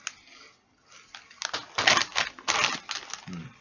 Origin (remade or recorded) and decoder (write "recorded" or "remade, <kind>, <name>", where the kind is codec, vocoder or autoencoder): recorded